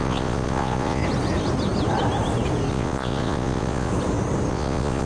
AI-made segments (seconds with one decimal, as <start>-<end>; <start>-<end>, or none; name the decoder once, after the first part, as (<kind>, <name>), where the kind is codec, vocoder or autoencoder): 0.0-1.0 (vocoder, Vocos); 2.7-3.9; 4.5-5.1